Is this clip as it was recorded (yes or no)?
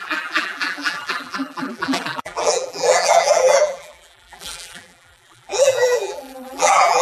no